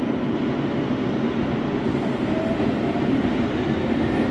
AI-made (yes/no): no